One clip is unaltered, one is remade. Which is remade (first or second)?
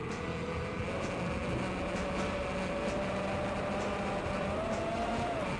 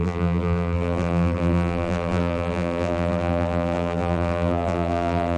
second